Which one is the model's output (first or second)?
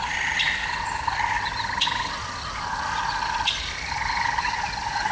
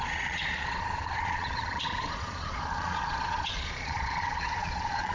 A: second